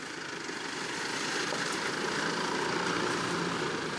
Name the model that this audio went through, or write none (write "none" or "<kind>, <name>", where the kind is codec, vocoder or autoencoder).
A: vocoder, BigVGAN v2